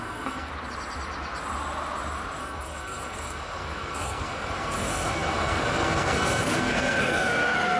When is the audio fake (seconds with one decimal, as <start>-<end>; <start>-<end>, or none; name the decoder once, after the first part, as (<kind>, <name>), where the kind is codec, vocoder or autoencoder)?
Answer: 0.0-0.5 (codec, SNAC); 2.4-7.8